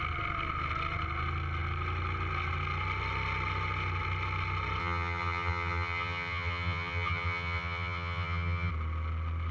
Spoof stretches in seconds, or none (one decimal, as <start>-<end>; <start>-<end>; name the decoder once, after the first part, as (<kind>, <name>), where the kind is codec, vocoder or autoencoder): 4.8-8.7 (vocoder, HiFi-GAN)